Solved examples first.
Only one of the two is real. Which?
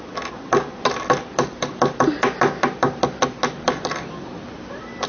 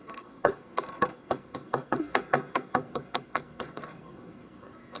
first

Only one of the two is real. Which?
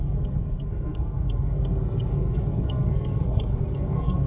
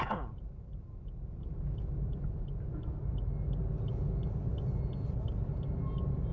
second